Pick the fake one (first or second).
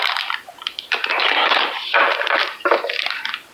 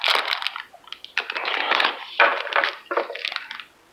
first